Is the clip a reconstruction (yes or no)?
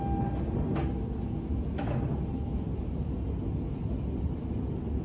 no